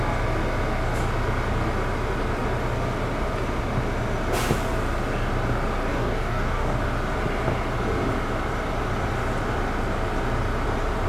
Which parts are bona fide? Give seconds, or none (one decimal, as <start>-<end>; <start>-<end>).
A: 0.0-5.9; 6.8-11.1